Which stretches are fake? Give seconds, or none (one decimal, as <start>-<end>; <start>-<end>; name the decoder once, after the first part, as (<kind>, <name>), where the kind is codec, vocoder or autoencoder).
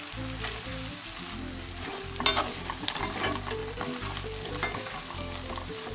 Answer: none